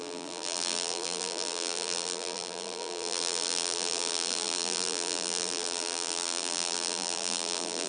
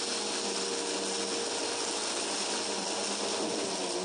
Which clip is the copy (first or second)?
first